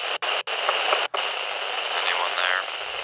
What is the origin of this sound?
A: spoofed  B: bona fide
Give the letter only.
B